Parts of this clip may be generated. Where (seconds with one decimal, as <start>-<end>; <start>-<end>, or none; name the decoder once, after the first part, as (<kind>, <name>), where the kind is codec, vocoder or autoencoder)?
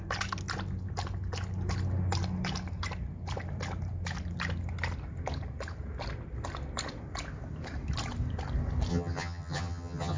8.9-10.2 (vocoder, HiFi-GAN)